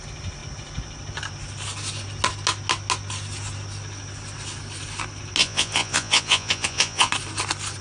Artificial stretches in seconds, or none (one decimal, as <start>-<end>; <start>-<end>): 5.4-7.1